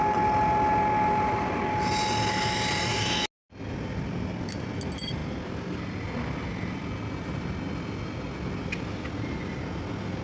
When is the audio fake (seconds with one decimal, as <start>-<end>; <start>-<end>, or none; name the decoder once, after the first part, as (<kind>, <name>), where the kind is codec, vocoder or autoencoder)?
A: none